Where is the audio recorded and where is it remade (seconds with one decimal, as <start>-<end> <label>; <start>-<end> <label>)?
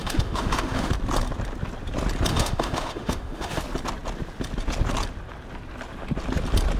0.0-0.9 remade; 0.9-2.3 recorded; 2.3-3.6 remade; 3.6-6.8 recorded